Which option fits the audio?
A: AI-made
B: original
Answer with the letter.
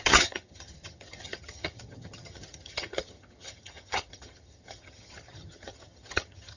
A